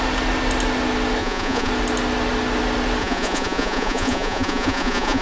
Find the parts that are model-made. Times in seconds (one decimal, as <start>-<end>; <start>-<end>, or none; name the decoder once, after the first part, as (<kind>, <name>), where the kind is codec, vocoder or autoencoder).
1.2-1.7 (vocoder, Vocos); 3.0-5.2